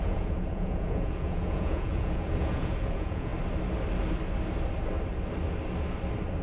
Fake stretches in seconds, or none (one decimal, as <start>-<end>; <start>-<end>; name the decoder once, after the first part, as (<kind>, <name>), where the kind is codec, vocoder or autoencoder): 0.0-3.3 (vocoder, Vocos)